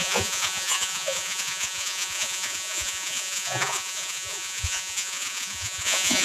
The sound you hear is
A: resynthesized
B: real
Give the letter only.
A